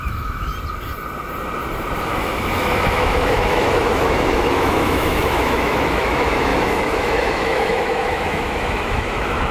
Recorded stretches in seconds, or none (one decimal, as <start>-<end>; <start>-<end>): 0.5-2.0